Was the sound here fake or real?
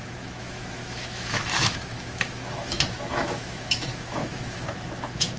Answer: fake